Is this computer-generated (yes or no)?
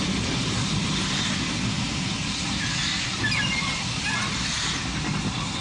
no